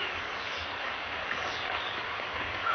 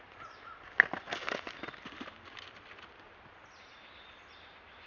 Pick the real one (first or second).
second